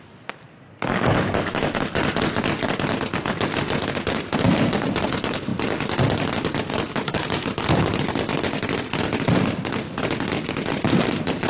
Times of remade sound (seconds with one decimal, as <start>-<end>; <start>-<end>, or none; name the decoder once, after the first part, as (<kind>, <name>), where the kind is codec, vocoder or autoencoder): none